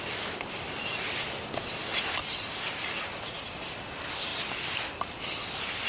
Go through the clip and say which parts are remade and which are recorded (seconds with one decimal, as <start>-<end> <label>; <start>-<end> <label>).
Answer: 0.0-5.9 recorded